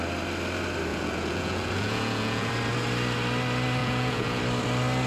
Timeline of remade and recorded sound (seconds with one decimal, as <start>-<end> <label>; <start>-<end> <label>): 0.0-0.9 recorded; 0.9-2.5 remade; 2.5-3.8 recorded; 3.8-4.4 remade; 4.4-5.1 recorded